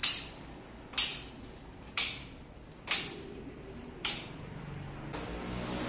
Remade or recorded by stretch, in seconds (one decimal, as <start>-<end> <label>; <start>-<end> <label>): 0.0-0.6 remade; 0.6-1.1 recorded; 1.1-4.6 remade; 4.6-5.9 recorded